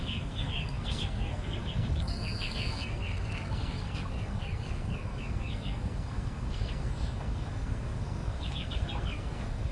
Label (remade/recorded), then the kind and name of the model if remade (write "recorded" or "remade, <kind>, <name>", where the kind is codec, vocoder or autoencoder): remade, codec, SNAC